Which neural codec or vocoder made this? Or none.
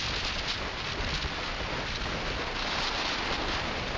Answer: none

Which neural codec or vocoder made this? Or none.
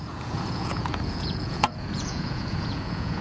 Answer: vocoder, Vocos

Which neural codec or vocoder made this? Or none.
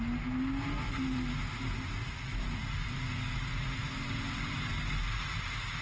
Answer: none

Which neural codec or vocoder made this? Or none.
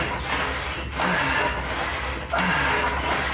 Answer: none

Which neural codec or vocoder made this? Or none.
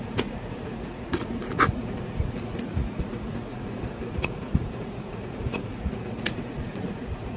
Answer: vocoder, Vocos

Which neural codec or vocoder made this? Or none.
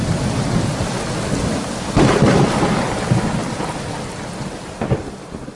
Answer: none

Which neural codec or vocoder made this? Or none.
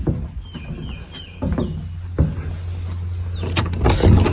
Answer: none